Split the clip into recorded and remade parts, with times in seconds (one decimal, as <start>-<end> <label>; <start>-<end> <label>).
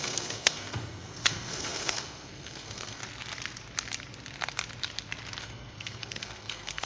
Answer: 0.0-3.0 remade; 3.0-5.4 recorded; 5.4-6.9 remade